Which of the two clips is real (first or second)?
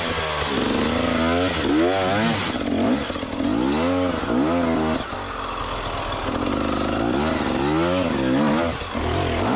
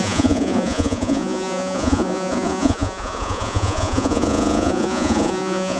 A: first